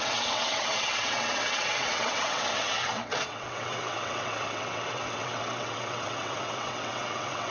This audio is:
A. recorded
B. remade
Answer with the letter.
B